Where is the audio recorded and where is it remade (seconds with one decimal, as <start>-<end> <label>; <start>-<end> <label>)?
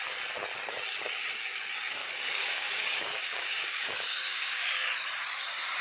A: 0.0-2.0 recorded; 2.0-4.9 remade; 4.9-5.8 recorded